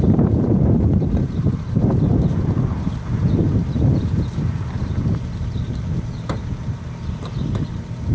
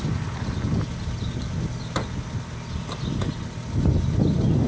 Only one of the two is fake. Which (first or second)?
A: first